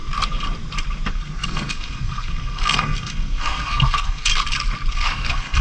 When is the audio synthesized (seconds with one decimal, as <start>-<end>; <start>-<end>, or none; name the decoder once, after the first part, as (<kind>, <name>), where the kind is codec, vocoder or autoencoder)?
1.1-4.3 (codec, SNAC); 4.9-5.6